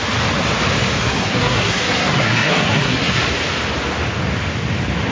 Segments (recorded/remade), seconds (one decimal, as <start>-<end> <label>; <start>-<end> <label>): 0.0-1.0 recorded; 1.0-3.2 remade; 3.2-5.1 recorded

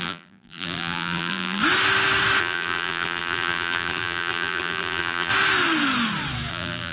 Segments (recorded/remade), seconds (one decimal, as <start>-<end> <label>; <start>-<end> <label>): 0.0-1.6 remade; 1.6-2.4 recorded; 2.4-5.3 remade; 5.3-6.5 recorded; 6.5-6.9 remade

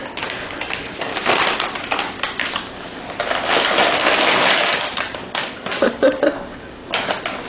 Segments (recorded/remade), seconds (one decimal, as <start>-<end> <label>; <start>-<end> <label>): 0.0-1.1 remade; 1.1-4.4 recorded; 4.4-6.8 remade; 6.8-7.5 recorded